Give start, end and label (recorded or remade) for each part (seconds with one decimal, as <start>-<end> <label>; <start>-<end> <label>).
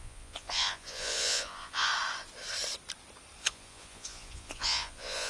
0.0-1.9 remade; 1.9-3.4 recorded; 3.4-5.3 remade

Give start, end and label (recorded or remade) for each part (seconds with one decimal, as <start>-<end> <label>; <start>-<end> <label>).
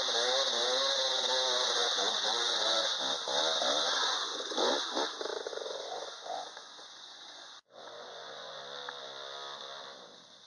0.0-1.8 recorded; 1.8-3.0 remade; 3.0-4.0 recorded; 4.0-4.7 remade; 4.7-5.3 recorded; 5.3-8.6 remade; 8.6-10.5 recorded